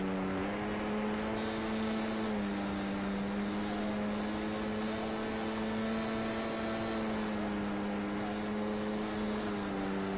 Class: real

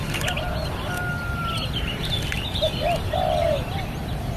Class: real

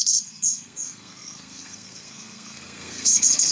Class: fake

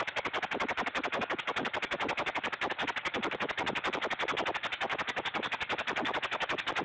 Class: real